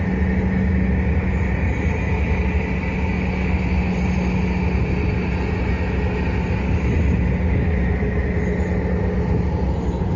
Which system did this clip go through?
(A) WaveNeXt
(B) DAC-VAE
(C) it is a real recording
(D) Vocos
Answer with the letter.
C